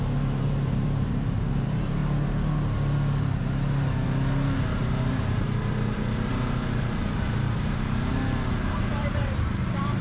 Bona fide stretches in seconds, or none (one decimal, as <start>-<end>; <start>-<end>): 2.0-5.1